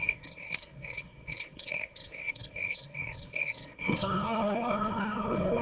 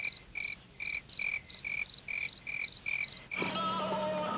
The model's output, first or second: first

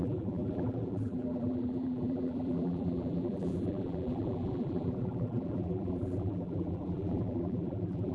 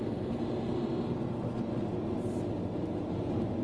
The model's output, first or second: first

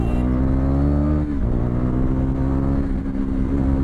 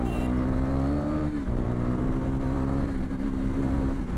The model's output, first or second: second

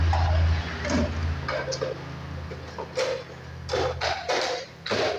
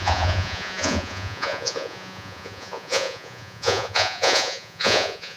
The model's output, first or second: second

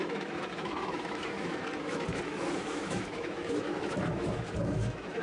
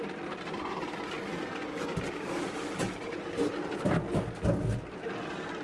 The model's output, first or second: first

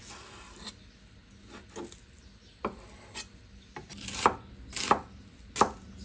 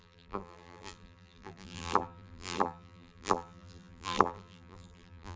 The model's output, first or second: second